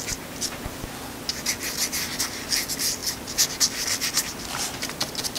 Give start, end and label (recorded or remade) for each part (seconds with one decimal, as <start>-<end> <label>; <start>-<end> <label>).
0.0-5.4 recorded